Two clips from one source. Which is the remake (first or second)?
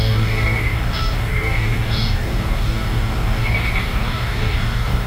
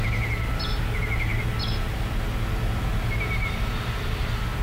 first